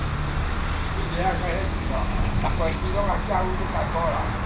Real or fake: real